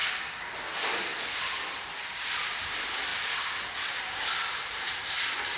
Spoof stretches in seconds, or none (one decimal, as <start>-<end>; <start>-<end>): none